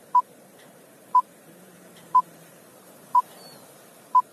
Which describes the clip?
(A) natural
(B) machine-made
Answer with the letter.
B